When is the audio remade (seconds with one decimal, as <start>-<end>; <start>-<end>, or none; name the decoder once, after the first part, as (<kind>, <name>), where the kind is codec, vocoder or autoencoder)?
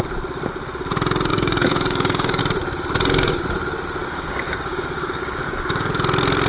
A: 1.3-2.4 (codec, DAC); 4.0-5.9